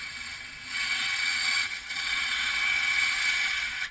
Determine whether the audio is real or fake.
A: fake